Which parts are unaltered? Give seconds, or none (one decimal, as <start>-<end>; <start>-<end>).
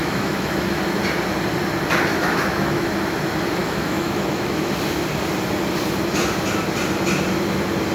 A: 0.8-2.1; 2.9-3.6; 4.7-7.9